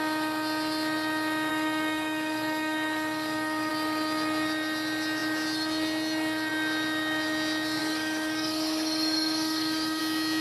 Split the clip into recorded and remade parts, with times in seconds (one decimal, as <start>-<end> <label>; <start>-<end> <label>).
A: 0.0-1.5 recorded; 1.5-3.7 remade; 3.7-7.8 recorded; 7.8-10.0 remade; 10.0-10.4 recorded